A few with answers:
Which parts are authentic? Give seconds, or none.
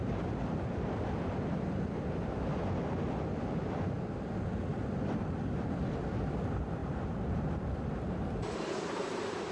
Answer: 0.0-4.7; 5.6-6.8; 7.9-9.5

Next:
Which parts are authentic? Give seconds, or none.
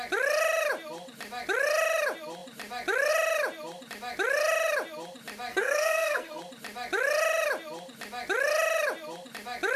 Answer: 0.0-5.5; 6.4-9.8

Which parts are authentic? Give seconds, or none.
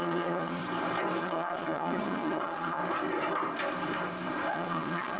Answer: 0.6-1.2; 2.8-4.5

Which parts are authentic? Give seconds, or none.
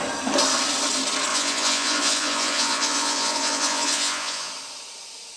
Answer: 0.0-1.3; 4.5-5.4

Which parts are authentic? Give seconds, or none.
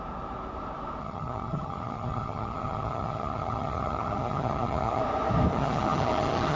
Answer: 0.0-1.0; 5.0-5.5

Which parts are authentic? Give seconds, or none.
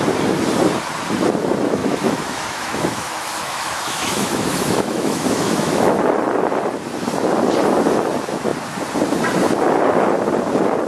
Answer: 0.0-1.8; 6.0-10.9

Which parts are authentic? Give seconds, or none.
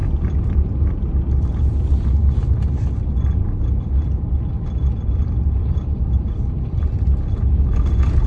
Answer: 0.0-8.3